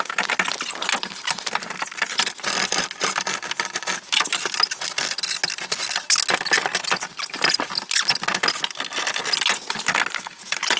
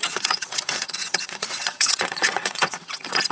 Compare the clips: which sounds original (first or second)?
first